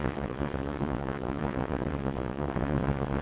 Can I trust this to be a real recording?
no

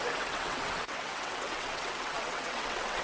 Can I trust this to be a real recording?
no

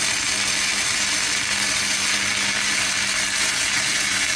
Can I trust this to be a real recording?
yes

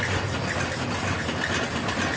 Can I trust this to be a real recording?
yes